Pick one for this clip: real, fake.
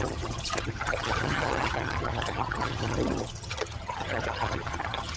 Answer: fake